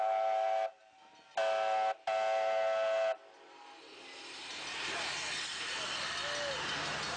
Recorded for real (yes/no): yes